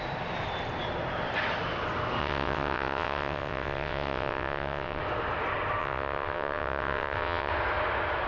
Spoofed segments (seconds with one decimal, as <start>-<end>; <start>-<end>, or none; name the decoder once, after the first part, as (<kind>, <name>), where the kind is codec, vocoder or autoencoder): 2.2-5.0 (vocoder, WaveNeXt); 5.8-7.5